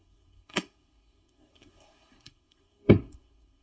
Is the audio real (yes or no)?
no